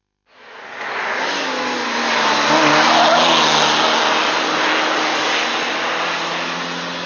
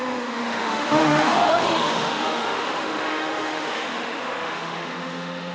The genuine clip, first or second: first